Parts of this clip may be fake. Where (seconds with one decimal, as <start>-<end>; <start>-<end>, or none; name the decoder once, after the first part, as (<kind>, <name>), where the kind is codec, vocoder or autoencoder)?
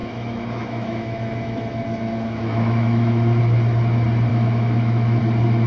0.0-3.4 (autoencoder, DAC-VAE); 4.3-5.2